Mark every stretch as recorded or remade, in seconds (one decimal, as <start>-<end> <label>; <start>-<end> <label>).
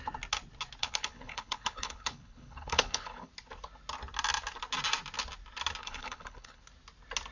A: 0.0-0.8 recorded; 0.8-3.3 remade; 3.3-5.8 recorded; 5.8-6.6 remade; 6.6-7.3 recorded